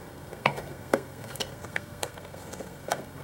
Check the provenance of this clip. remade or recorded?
remade